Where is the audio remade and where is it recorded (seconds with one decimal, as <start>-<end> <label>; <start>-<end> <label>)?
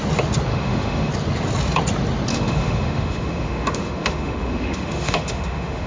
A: 0.0-0.5 recorded; 0.5-1.1 remade; 1.1-2.3 recorded; 2.3-5.9 remade